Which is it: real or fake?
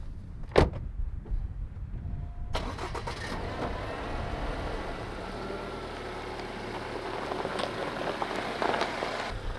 real